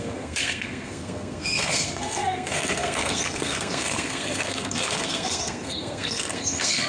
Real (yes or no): no